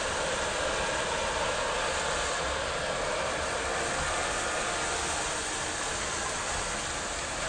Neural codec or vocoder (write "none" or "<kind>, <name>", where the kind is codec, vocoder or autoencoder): none